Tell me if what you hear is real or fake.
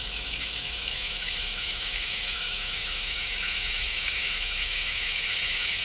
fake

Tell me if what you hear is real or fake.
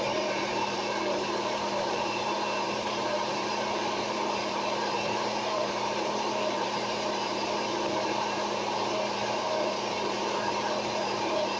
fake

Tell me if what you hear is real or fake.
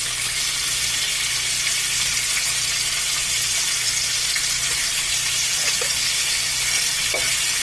real